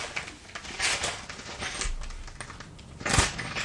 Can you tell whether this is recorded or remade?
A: recorded